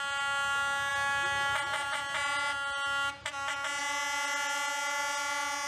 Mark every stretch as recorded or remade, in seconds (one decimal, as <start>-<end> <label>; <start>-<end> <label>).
0.0-5.7 recorded